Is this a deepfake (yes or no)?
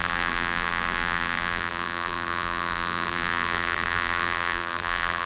yes